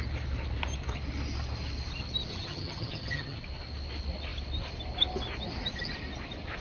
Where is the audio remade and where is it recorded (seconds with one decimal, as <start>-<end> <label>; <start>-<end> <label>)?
0.0-2.3 recorded; 2.3-3.4 remade; 3.4-6.6 recorded